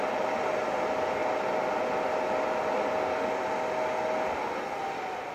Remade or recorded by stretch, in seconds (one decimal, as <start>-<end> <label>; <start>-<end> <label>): 0.0-5.3 recorded